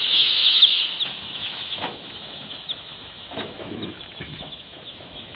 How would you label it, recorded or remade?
remade